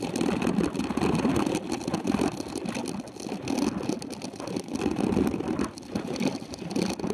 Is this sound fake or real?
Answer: real